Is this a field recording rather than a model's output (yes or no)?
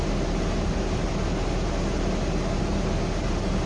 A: yes